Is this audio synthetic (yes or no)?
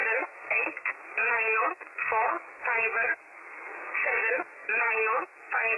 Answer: yes